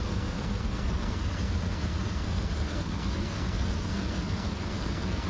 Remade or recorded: remade